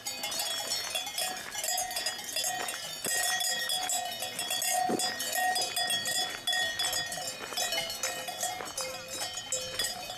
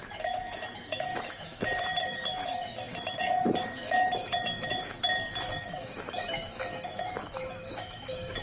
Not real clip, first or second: second